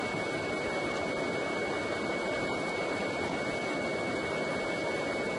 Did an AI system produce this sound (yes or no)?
no